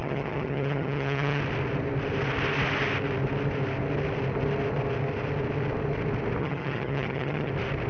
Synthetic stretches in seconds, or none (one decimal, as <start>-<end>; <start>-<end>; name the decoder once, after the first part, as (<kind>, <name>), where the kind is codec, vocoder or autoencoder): 0.0-1.4 (vocoder, HiFi-GAN); 6.4-7.5